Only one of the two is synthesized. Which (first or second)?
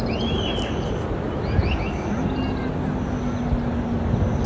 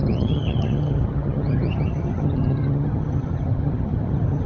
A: second